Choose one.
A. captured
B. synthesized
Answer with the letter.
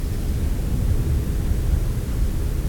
A